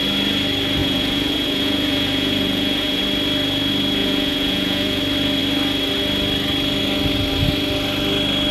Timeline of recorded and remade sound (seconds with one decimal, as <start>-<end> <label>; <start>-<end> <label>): 0.0-0.8 recorded; 0.8-3.0 remade; 3.0-4.0 recorded; 4.0-5.0 remade; 5.0-8.5 recorded